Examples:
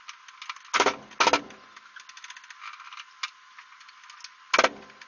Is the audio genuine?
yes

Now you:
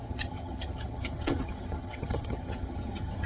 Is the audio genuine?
no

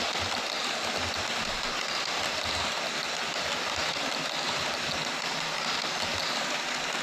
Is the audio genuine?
yes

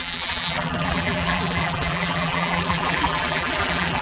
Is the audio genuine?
no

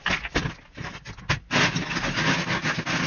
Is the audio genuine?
yes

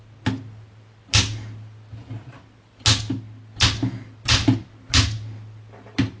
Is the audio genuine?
yes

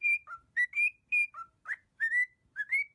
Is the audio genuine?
yes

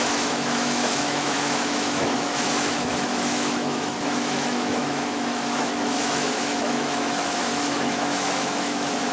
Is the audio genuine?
no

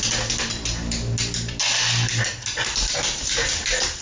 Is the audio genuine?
yes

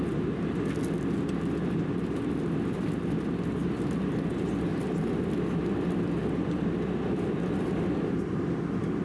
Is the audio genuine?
yes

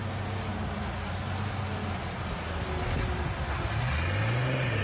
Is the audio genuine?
yes